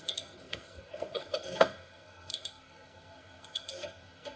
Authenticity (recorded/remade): remade